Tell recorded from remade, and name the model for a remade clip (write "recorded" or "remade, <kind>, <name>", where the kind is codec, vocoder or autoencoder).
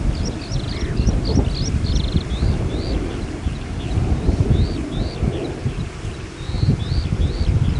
remade, vocoder, BigVGAN v2